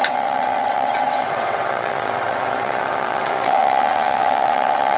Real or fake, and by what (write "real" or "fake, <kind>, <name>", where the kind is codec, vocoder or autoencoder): fake, vocoder, WaveNeXt